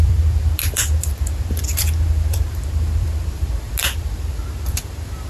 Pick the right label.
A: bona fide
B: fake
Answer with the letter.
B